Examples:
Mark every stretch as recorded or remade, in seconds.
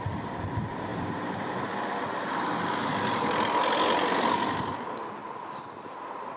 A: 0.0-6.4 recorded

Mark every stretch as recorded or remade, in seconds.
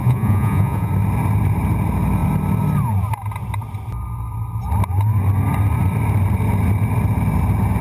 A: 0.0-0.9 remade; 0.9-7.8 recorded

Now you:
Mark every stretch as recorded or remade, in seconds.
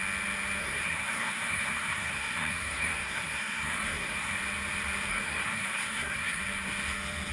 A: 0.0-0.6 recorded; 0.6-4.4 remade; 4.4-5.1 recorded; 5.1-6.4 remade; 6.4-7.3 recorded